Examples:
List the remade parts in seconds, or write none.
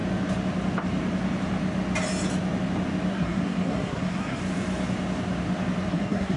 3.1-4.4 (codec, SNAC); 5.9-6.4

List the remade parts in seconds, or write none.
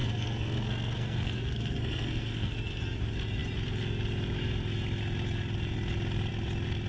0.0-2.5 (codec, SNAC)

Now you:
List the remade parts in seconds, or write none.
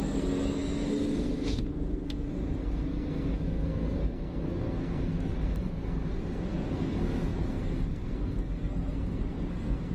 0.0-9.9 (codec, SNAC)